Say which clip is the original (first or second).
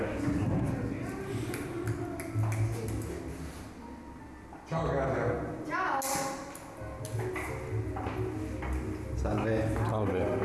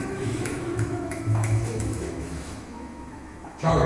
first